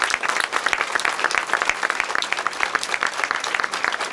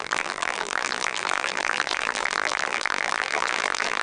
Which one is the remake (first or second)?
second